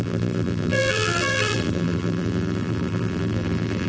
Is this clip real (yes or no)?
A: no